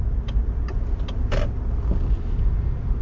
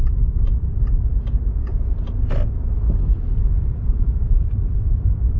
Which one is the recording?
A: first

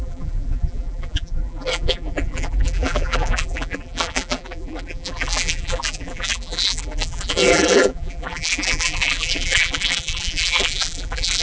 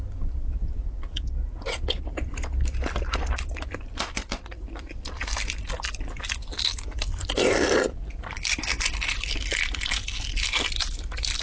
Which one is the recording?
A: second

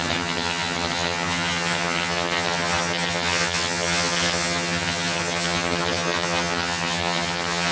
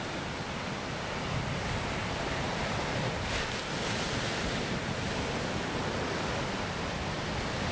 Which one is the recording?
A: second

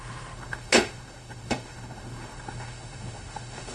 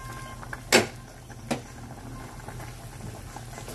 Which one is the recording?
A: second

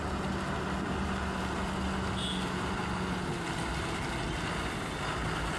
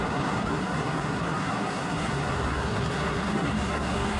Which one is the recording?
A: first